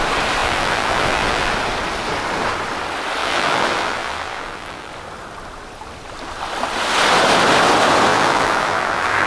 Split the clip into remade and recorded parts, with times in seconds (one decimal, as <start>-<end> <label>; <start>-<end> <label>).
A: 0.0-0.4 recorded; 0.4-1.5 remade; 1.5-3.2 recorded; 3.2-4.9 remade; 4.9-8.1 recorded; 8.1-9.3 remade